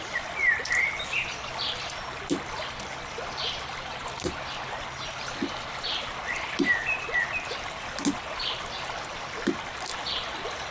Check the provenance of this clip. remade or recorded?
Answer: recorded